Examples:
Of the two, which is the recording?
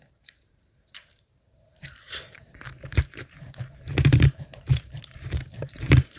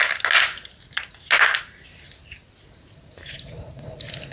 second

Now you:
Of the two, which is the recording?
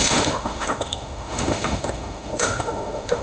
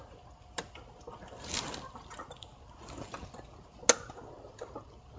second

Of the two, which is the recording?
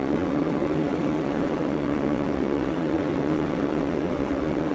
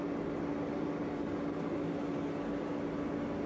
second